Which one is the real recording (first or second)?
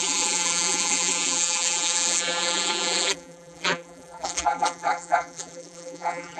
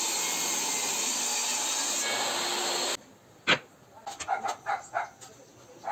second